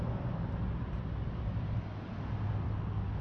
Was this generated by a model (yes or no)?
no